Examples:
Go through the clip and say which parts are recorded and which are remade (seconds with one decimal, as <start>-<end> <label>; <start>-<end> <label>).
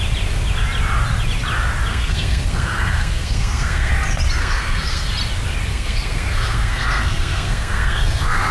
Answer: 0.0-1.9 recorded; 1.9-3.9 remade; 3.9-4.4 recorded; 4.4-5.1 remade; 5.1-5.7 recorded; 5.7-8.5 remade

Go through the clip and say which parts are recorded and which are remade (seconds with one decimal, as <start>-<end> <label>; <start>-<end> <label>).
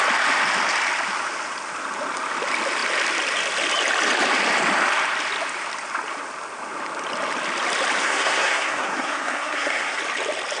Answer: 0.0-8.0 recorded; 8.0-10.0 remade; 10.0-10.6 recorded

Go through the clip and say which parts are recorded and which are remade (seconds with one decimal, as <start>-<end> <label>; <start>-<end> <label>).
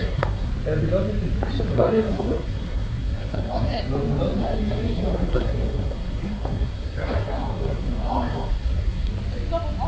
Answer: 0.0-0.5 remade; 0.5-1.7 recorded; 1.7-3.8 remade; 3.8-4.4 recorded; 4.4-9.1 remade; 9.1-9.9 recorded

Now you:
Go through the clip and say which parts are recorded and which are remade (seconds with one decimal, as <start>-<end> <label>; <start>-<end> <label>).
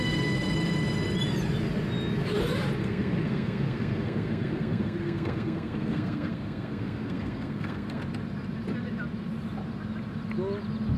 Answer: 0.0-2.8 recorded; 2.8-8.0 remade; 8.0-11.0 recorded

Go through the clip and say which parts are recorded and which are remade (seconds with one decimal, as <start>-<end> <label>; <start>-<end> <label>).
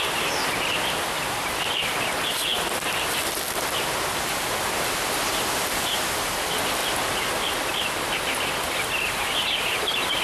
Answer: 0.0-10.2 recorded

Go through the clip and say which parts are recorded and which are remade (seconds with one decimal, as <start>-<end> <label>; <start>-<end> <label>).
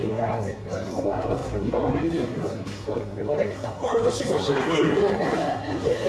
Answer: 0.0-6.1 remade